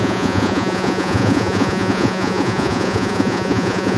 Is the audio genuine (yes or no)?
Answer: no